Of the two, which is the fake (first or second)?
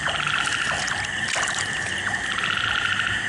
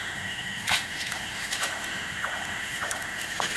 second